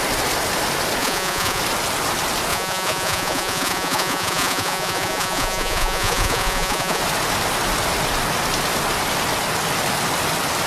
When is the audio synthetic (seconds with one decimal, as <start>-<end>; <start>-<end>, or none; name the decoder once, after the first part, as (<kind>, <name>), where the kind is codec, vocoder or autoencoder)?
1.0-1.6 (vocoder, Vocos); 2.5-7.0